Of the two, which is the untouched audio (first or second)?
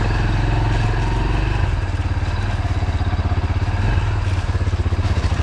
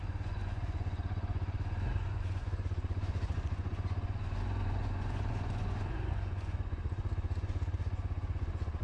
first